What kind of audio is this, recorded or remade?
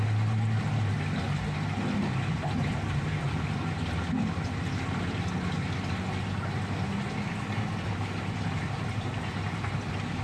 recorded